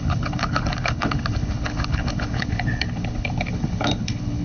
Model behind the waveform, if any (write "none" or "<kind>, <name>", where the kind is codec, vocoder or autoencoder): codec, HILCodec